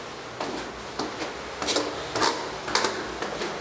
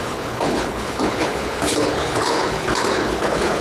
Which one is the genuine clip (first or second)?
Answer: first